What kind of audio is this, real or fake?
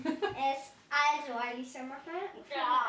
real